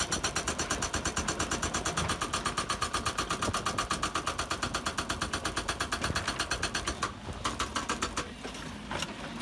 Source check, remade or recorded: recorded